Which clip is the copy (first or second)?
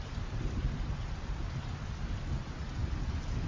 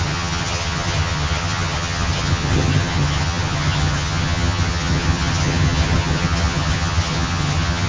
second